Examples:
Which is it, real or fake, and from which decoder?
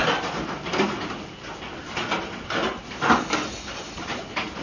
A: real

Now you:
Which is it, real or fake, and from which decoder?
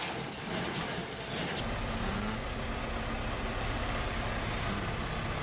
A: real